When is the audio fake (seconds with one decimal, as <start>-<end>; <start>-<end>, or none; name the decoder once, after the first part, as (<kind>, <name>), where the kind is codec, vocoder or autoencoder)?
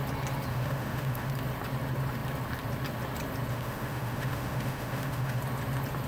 0.5-1.3 (autoencoder, DAC-VAE); 3.5-5.4